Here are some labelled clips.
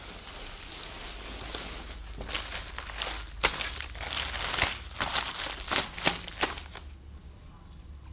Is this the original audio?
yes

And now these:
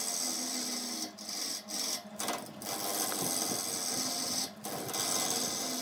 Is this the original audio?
yes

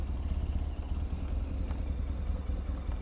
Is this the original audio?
yes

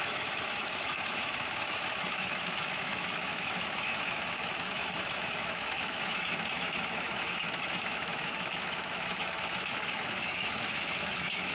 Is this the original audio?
no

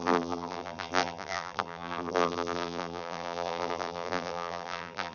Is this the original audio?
no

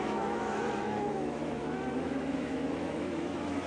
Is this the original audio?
no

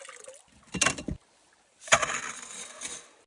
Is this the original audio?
yes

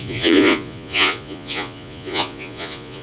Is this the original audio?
no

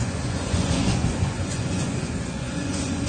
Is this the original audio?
no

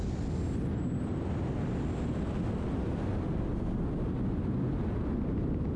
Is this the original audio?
yes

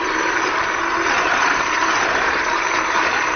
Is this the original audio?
yes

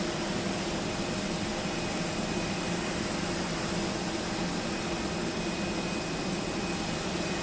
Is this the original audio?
yes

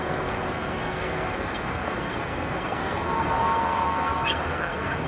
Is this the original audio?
no